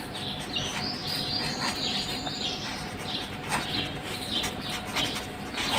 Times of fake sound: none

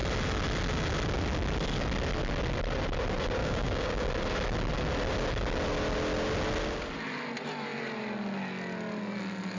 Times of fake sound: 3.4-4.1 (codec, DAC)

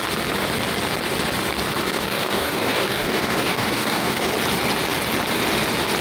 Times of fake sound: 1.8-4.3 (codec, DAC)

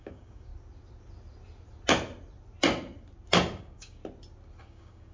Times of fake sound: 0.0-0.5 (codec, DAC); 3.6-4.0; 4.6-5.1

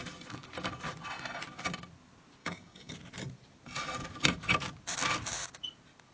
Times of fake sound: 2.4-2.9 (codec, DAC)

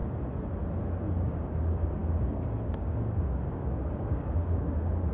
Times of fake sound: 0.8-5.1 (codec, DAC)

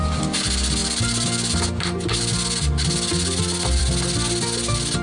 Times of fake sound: none

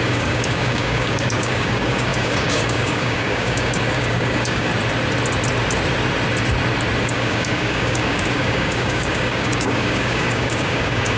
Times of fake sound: 0.0-4.7 (codec, DAC); 7.0-11.2